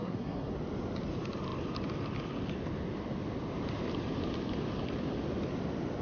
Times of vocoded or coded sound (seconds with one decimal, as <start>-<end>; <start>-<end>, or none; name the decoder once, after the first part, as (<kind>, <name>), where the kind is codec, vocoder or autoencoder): 0.0-0.5 (codec, SNAC)